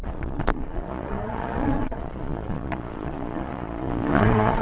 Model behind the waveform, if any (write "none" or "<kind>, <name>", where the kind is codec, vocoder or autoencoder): vocoder, Vocos